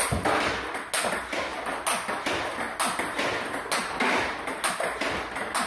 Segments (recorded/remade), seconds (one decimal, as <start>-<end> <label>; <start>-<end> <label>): 0.0-5.7 recorded